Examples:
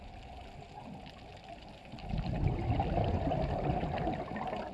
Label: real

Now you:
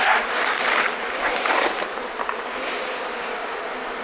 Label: real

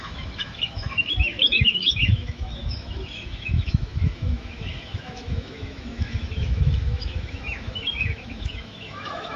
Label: fake